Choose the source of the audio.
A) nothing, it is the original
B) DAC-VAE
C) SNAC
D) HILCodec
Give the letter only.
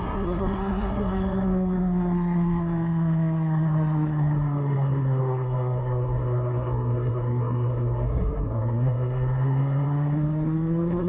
C